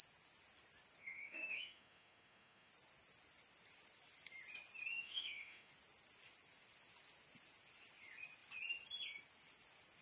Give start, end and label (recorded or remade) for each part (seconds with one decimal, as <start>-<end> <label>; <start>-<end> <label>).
0.0-1.0 recorded; 1.0-2.7 remade; 2.7-4.9 recorded; 4.9-5.7 remade; 5.7-10.0 recorded